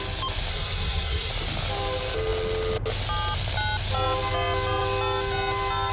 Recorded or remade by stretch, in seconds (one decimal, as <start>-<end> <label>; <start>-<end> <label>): 0.0-0.5 recorded; 0.5-1.3 remade; 1.3-5.9 recorded